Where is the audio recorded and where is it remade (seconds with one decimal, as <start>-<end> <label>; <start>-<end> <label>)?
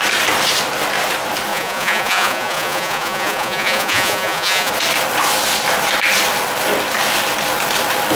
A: 0.0-1.5 recorded; 1.5-4.7 remade; 4.7-8.2 recorded